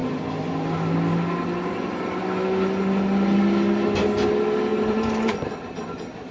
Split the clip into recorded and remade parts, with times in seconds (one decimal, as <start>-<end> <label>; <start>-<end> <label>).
0.0-4.7 recorded; 4.7-5.5 remade; 5.5-6.3 recorded